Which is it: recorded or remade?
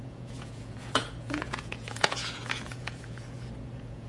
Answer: remade